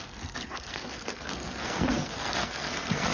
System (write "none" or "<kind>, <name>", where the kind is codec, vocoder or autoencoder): codec, SNAC